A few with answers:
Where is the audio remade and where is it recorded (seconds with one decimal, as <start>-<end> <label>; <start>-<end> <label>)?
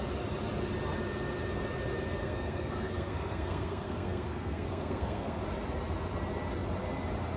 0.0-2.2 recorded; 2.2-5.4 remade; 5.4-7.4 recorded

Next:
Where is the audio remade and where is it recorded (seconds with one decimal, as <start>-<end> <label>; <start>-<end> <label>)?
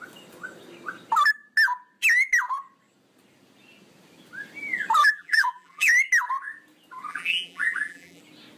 0.0-5.0 recorded; 5.0-5.9 remade; 5.9-7.1 recorded; 7.1-8.2 remade; 8.2-8.6 recorded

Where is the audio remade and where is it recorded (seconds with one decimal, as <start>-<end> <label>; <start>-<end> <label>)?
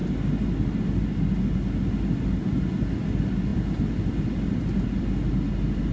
0.0-5.9 recorded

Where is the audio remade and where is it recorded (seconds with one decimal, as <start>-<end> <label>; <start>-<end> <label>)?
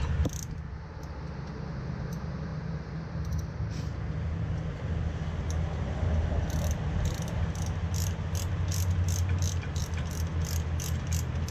0.0-11.5 recorded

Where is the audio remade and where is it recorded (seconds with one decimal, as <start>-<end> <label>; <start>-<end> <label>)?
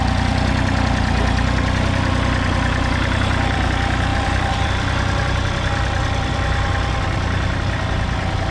0.0-4.1 recorded; 4.1-4.7 remade; 4.7-8.5 recorded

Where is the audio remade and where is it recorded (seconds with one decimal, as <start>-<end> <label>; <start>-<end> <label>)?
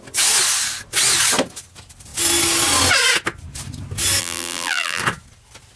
0.0-4.2 recorded; 4.2-5.0 remade; 5.0-5.8 recorded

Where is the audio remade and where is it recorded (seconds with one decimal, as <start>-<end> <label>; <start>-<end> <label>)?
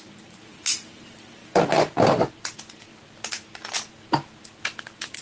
0.0-2.9 remade; 2.9-4.8 recorded; 4.8-5.2 remade